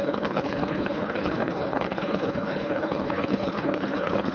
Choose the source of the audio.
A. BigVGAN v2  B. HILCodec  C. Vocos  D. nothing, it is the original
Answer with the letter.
B